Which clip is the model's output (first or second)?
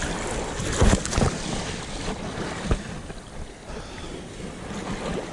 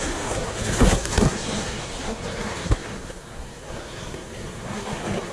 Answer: second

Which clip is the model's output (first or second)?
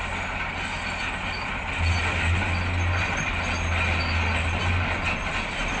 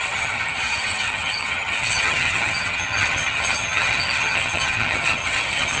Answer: second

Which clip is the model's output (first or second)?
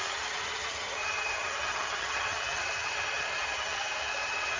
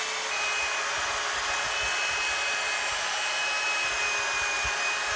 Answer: first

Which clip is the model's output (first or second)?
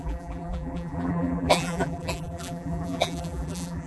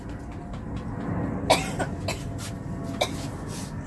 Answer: first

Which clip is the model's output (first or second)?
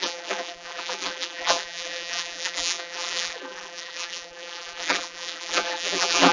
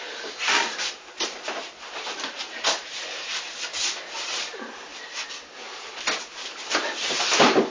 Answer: first